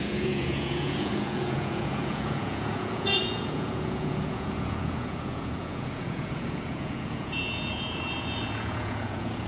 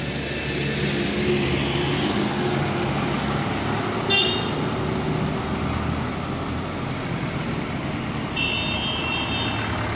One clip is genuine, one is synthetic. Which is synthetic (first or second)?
first